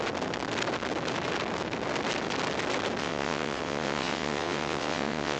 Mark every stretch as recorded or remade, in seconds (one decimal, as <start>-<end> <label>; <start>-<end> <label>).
0.0-3.0 recorded; 3.0-5.4 remade